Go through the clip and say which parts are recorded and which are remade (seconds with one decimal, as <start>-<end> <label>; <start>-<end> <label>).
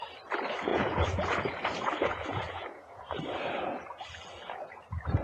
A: 0.0-0.7 recorded; 0.7-3.8 remade; 3.8-4.4 recorded; 4.4-5.2 remade